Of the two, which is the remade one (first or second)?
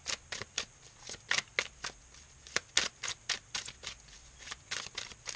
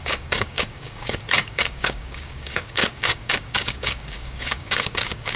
second